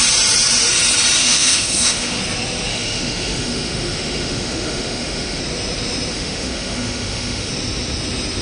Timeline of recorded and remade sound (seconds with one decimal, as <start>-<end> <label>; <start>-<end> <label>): 0.0-1.2 recorded; 1.2-2.2 remade; 2.2-2.7 recorded; 2.7-5.4 remade; 5.4-6.1 recorded; 6.1-7.5 remade; 7.5-8.4 recorded